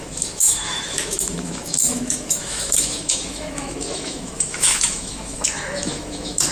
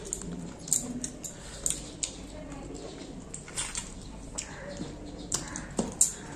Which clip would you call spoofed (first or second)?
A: first